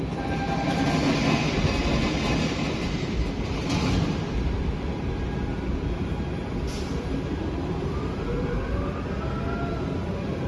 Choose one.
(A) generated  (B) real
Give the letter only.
B